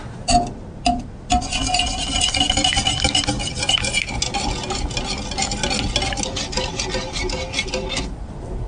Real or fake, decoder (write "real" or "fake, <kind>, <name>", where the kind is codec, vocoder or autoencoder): real